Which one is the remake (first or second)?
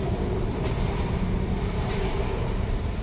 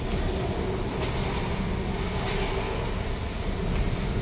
first